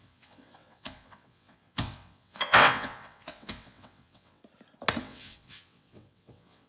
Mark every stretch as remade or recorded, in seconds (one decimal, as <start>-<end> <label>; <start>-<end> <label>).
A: 0.0-4.4 remade; 4.4-5.0 recorded; 5.0-6.7 remade